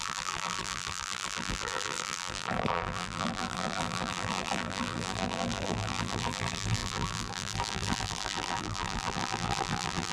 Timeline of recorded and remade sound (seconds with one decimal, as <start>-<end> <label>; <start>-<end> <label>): 0.0-10.1 remade